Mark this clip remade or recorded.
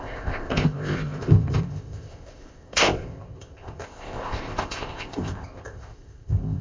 remade